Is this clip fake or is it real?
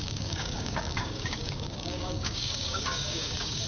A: fake